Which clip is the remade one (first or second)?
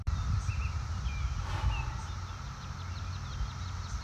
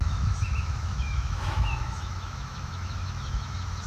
second